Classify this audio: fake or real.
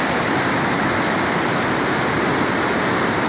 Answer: real